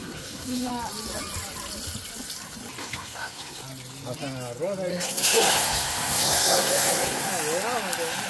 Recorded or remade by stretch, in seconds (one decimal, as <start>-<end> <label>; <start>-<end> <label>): 0.0-0.7 remade; 0.7-2.8 recorded; 2.8-3.6 remade; 3.6-4.9 recorded; 4.9-7.3 remade; 7.3-8.3 recorded